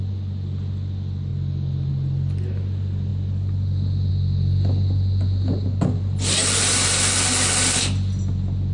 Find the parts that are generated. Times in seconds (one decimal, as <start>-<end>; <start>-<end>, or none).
none